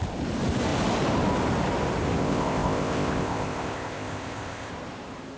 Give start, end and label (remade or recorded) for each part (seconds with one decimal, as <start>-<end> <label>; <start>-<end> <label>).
0.0-2.2 recorded; 2.2-4.7 remade; 4.7-5.4 recorded